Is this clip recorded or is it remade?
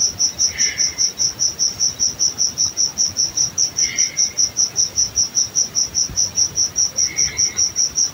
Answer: recorded